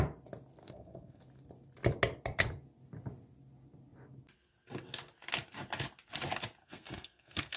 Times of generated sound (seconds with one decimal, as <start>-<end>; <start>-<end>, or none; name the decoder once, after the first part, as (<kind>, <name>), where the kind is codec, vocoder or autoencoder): 0.6-1.2 (codec, SNAC); 6.6-7.6